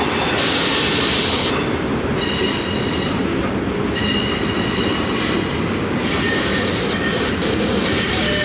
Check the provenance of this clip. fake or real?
real